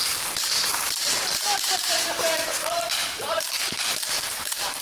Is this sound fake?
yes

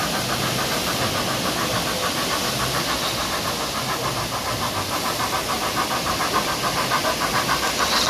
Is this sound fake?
no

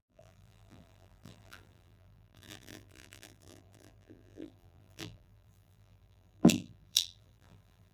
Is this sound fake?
yes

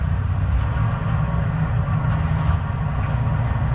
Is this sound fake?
no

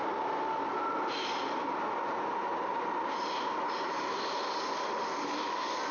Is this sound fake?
no